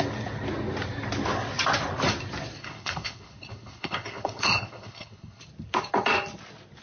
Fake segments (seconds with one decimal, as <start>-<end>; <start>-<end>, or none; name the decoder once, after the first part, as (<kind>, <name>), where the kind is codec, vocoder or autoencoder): 2.6-5.4 (codec, HILCodec)